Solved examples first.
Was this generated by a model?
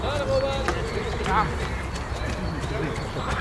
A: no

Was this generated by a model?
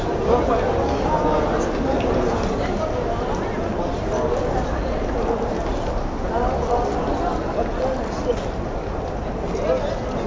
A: no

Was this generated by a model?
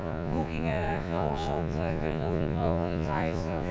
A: yes